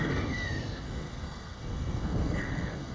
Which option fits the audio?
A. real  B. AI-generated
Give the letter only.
B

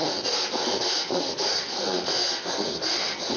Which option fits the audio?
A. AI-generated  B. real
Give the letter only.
A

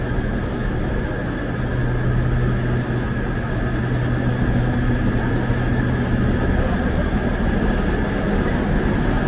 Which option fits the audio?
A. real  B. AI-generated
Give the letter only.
A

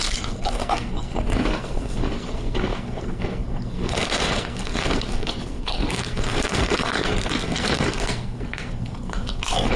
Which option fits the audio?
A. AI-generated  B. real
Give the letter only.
A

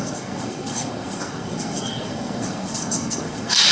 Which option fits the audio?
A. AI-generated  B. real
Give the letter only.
A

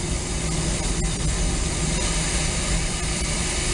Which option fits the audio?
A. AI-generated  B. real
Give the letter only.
B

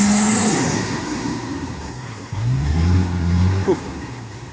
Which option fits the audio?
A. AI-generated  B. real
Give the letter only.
A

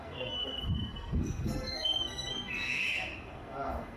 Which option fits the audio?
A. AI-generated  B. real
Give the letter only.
A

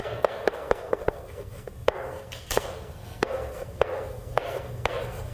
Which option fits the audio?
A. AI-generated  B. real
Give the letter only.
A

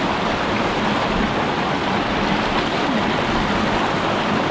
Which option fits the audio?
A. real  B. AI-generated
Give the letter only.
A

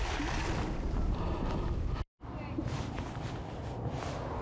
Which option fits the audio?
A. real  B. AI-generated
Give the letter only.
A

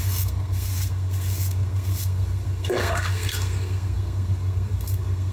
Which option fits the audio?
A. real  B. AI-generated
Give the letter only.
B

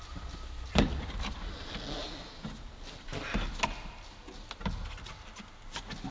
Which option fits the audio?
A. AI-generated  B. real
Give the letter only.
B